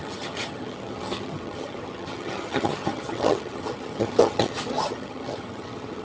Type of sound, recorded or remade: remade